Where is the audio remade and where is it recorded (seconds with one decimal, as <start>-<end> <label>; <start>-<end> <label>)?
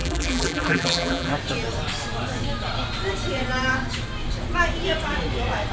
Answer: 0.0-1.3 remade; 1.3-5.7 recorded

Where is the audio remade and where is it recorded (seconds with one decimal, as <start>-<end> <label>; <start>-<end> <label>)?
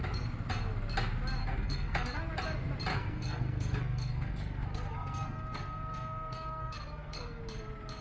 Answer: 0.0-1.4 recorded; 1.4-2.3 remade; 2.3-2.9 recorded; 2.9-7.4 remade; 7.4-8.0 recorded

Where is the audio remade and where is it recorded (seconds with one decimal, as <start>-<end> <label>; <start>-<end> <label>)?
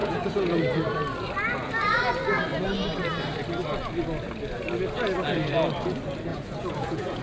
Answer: 0.0-0.6 remade; 0.6-6.3 recorded; 6.3-7.2 remade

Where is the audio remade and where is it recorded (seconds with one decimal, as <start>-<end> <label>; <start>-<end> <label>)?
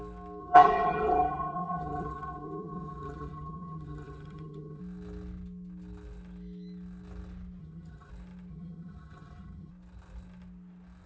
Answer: 0.0-0.4 recorded; 0.4-4.8 remade; 4.8-7.6 recorded; 7.6-8.1 remade; 8.1-8.5 recorded; 8.5-9.7 remade; 9.7-11.1 recorded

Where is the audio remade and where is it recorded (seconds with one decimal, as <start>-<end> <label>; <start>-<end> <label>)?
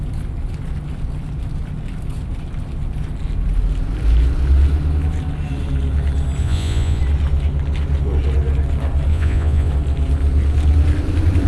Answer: 0.0-6.4 recorded; 6.4-7.0 remade; 7.0-9.1 recorded; 9.1-9.7 remade; 9.7-11.5 recorded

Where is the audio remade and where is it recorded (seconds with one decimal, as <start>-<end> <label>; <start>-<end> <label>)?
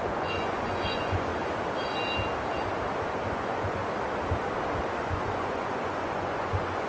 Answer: 0.0-1.3 remade; 1.3-3.3 recorded; 3.3-3.8 remade; 3.8-5.0 recorded; 5.0-6.9 remade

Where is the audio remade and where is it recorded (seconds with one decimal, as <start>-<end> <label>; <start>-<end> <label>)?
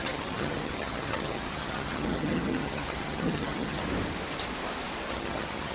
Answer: 0.0-3.8 remade; 3.8-5.1 recorded; 5.1-5.7 remade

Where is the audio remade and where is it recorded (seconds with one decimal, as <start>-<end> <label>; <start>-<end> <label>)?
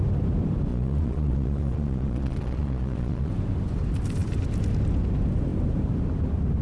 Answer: 0.0-0.7 recorded; 0.7-3.3 remade; 3.3-6.6 recorded